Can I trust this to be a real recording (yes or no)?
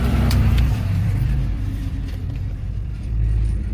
no